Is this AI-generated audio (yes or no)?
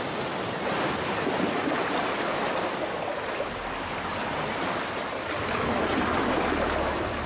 no